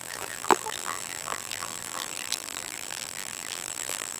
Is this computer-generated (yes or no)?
yes